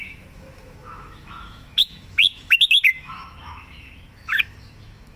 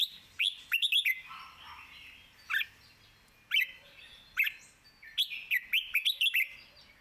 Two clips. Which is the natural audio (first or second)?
second